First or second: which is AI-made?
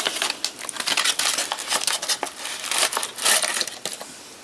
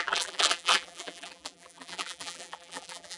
second